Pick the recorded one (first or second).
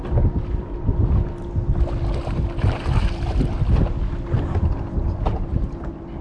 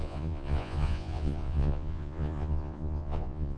first